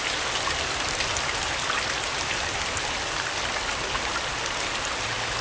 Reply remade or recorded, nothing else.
recorded